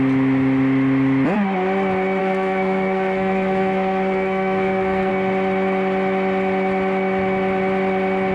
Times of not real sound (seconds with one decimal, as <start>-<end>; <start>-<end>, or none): 2.2-5.1